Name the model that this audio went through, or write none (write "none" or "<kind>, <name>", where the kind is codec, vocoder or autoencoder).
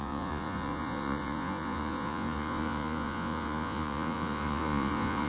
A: vocoder, Vocos